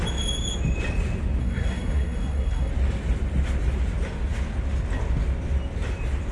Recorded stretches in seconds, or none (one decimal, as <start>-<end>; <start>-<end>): 0.0-1.4; 2.7-6.3